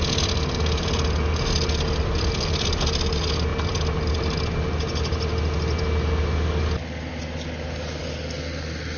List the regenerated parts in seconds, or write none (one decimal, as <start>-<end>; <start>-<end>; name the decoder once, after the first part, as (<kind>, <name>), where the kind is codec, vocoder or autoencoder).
none